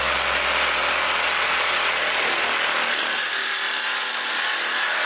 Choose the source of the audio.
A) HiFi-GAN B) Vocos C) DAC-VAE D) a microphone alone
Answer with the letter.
D